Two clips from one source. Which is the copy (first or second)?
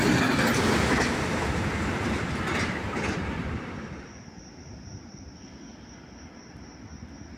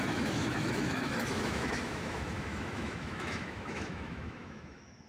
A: second